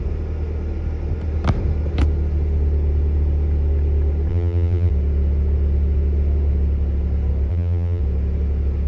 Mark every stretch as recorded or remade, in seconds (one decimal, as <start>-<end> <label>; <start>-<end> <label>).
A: 0.0-4.3 recorded; 4.3-4.9 remade; 4.9-7.5 recorded; 7.5-8.0 remade; 8.0-8.9 recorded